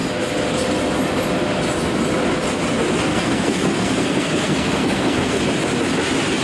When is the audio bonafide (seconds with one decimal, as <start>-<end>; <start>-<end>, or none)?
0.0-3.1; 5.4-6.4